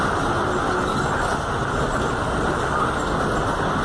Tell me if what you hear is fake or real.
real